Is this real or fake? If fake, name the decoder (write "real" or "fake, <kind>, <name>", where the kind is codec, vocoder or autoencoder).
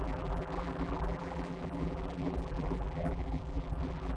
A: fake, vocoder, BigVGAN v2